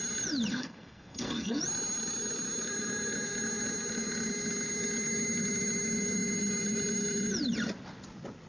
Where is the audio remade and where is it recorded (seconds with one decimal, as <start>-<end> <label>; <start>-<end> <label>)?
0.0-0.5 recorded; 0.5-1.6 remade; 1.6-8.5 recorded